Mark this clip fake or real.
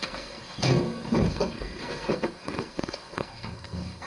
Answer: fake